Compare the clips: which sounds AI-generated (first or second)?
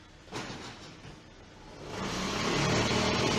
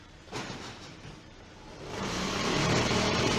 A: second